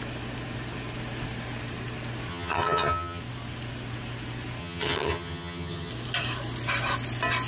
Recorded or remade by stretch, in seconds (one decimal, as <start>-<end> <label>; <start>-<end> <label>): 0.0-2.3 recorded; 2.3-3.2 remade; 3.2-4.6 recorded; 4.6-5.9 remade; 5.9-7.5 recorded